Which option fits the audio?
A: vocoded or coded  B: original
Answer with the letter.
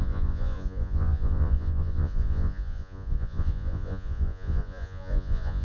A